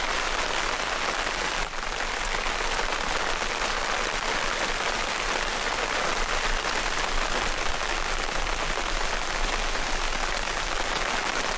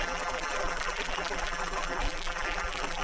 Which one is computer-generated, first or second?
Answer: second